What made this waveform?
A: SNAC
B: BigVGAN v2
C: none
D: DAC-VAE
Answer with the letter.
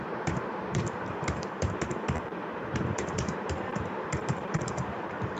B